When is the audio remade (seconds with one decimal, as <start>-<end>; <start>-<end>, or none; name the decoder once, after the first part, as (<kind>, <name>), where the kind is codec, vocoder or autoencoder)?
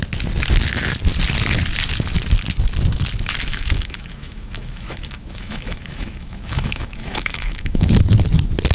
3.5-7.9 (autoencoder, DAC-VAE)